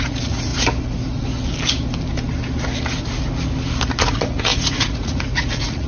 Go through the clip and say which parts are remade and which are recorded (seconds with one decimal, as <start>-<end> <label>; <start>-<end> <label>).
0.0-0.5 remade; 0.5-4.0 recorded; 4.0-5.9 remade